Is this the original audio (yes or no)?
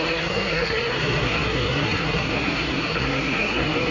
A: no